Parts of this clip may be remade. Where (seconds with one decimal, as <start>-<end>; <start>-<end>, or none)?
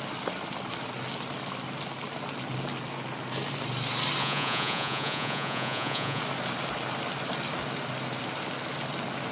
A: 4.2-6.2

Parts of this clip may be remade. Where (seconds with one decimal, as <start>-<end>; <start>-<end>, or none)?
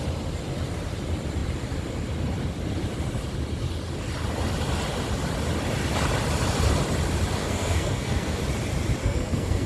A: 7.4-8.4; 9.0-9.7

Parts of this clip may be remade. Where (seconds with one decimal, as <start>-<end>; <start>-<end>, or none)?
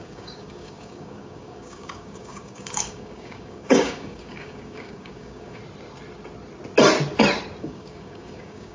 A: 0.0-5.6; 7.6-8.7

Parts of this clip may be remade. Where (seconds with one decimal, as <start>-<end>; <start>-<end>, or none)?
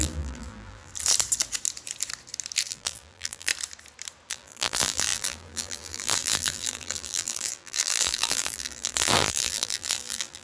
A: 0.0-0.9; 2.7-3.5; 4.3-10.4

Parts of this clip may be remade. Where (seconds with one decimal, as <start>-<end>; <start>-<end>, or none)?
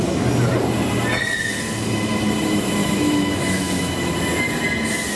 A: 2.8-3.9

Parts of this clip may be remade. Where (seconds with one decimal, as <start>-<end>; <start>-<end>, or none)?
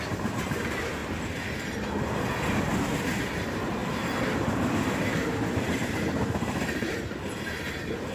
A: none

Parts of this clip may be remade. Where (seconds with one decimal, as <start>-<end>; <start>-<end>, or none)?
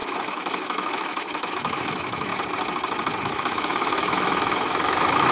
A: 0.0-2.3; 3.2-5.3